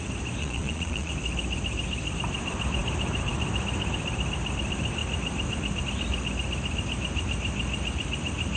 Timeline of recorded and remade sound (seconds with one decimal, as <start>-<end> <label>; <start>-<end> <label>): 0.0-0.4 recorded; 0.4-1.1 remade; 1.1-8.6 recorded